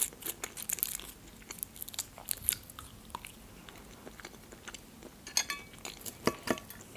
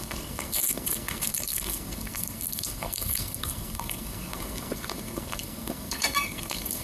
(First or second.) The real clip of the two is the first